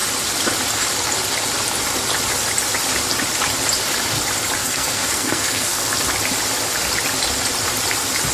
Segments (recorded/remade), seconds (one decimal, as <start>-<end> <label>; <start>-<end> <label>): 0.0-4.6 recorded; 4.6-5.9 remade; 5.9-8.3 recorded

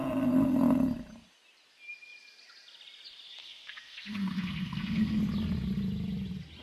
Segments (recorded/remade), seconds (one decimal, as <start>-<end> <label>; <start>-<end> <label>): 0.0-3.4 recorded; 3.4-5.2 remade; 5.2-6.6 recorded

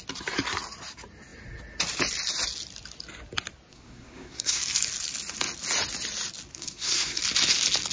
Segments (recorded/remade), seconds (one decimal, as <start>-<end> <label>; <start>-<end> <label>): 0.0-3.7 recorded; 3.7-4.6 remade; 4.6-6.5 recorded; 6.5-7.2 remade; 7.2-7.9 recorded

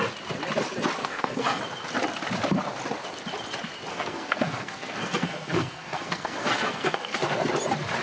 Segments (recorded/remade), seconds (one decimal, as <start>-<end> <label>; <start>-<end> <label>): 0.0-1.0 recorded; 1.0-1.6 remade; 1.6-3.9 recorded; 3.9-7.5 remade; 7.5-8.0 recorded

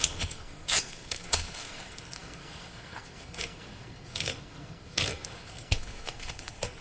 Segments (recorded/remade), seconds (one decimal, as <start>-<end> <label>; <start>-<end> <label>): 0.0-6.8 remade

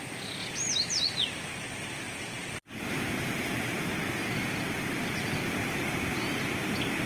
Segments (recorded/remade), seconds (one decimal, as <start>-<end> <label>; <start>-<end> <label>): 0.0-7.1 recorded